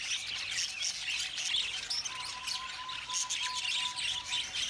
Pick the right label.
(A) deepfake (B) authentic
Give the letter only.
B